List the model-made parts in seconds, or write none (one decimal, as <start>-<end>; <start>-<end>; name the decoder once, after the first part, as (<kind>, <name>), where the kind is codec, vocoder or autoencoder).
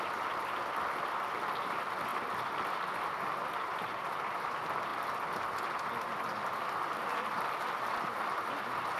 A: none